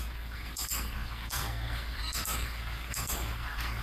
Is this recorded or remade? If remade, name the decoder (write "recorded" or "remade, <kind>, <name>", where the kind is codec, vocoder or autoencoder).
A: remade, codec, SNAC